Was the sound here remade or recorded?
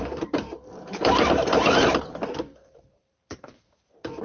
remade